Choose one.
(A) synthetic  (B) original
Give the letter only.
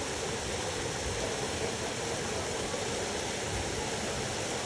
B